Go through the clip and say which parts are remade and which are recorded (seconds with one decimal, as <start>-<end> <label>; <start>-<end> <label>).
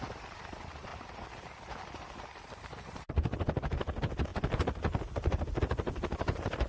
0.0-0.9 remade; 0.9-2.6 recorded; 2.6-4.3 remade; 4.3-5.6 recorded; 5.6-6.7 remade